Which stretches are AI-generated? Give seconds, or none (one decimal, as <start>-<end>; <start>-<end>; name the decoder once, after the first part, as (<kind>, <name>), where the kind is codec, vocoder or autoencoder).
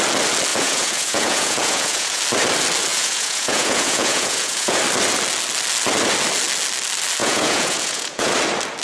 0.5-2.2 (vocoder, Vocos); 2.9-4.8; 7.2-8.3